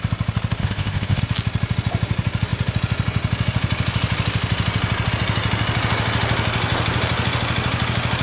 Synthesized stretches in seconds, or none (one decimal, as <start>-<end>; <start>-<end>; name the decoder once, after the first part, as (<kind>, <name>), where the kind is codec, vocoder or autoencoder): 0.6-1.2 (codec, ZipCodec)